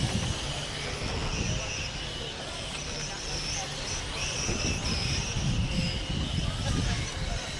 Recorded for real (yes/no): yes